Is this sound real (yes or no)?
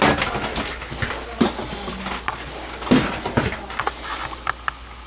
yes